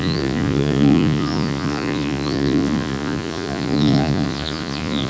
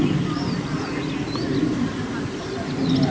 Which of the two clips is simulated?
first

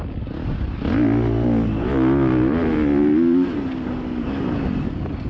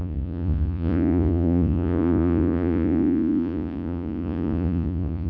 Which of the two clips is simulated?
second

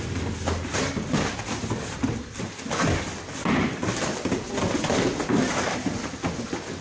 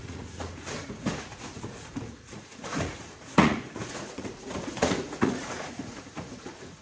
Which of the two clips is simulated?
second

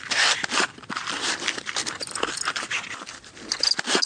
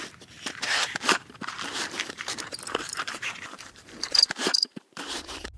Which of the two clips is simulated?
second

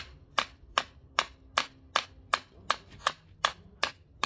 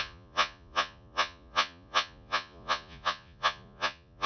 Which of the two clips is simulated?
second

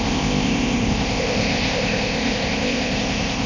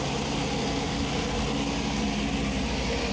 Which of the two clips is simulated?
first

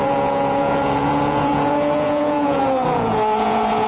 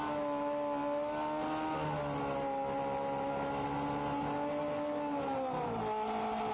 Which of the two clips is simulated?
first